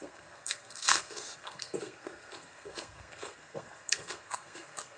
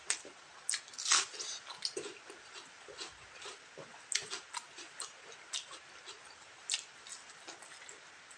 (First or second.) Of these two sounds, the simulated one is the first